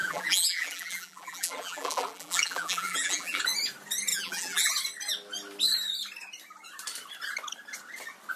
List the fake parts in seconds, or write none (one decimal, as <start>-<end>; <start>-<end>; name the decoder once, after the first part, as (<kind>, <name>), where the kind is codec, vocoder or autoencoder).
0.0-3.4 (vocoder, BigVGAN v2); 4.1-4.7